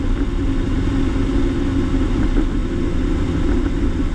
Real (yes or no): yes